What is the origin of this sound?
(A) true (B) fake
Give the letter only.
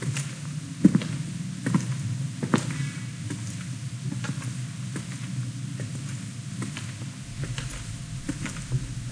A